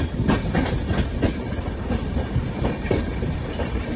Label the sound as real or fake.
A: real